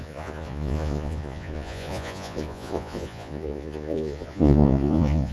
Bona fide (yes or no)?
no